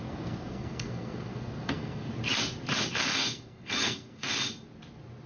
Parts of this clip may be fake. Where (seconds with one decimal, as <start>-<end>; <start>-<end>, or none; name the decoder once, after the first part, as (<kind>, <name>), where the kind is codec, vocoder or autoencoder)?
0.0-2.1 (codec, SNAC); 3.2-4.3